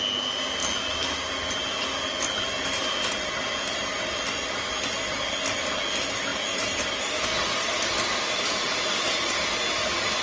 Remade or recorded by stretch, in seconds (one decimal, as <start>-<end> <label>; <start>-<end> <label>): 0.0-10.2 recorded